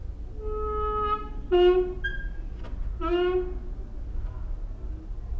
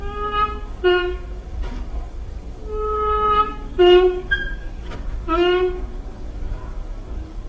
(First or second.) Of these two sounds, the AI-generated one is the second